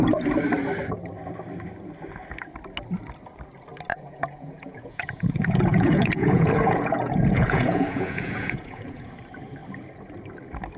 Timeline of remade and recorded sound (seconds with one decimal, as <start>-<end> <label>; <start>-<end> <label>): 0.0-3.9 recorded; 3.9-9.1 remade; 9.1-10.8 recorded